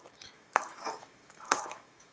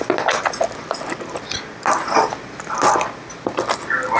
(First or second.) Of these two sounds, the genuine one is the second